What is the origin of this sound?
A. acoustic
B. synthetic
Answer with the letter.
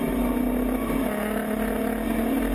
A